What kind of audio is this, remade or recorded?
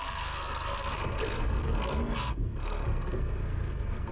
remade